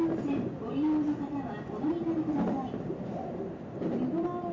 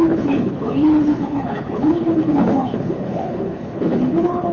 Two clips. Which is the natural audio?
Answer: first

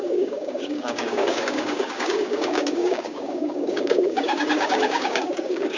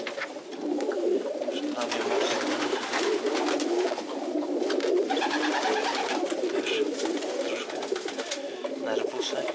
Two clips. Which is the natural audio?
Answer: second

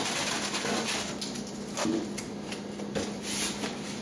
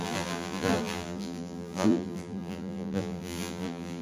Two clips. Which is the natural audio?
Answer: first